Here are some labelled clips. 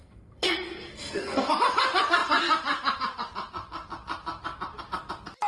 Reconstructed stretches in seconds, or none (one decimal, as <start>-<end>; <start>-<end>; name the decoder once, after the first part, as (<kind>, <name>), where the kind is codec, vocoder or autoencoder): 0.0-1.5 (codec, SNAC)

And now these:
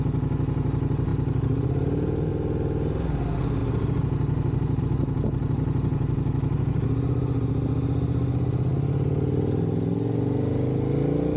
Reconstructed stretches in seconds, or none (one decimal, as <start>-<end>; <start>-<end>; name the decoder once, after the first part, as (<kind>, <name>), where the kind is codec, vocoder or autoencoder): none

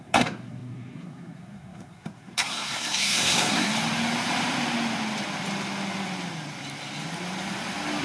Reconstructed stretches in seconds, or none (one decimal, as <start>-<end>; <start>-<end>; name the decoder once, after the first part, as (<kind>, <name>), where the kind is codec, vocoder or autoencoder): 0.0-3.7 (codec, SNAC)

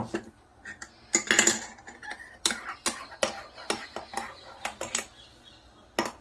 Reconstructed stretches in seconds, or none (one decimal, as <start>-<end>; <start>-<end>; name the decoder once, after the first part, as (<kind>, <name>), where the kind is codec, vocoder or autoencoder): none

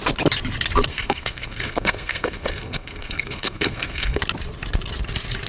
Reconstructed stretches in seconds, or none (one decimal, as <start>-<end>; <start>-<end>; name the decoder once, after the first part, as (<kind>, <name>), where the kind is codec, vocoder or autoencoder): 0.9-4.2 (codec, SNAC)

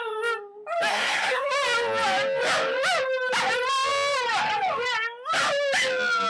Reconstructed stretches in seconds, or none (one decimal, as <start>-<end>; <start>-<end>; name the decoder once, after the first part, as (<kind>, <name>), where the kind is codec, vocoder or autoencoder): 0.9-1.5 (codec, SNAC)

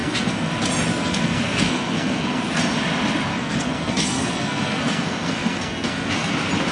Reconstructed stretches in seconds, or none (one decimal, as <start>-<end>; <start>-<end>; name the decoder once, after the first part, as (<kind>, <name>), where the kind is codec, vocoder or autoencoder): 0.0-0.5 (codec, SNAC); 0.9-2.6; 3.3-6.3

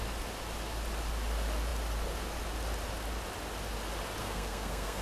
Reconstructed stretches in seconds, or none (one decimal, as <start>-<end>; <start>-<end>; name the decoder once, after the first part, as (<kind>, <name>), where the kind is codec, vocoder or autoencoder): 4.2-5.0 (codec, SNAC)